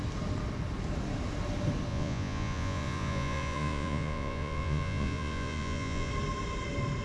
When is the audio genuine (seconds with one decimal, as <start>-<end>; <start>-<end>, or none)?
0.0-1.9; 6.1-7.0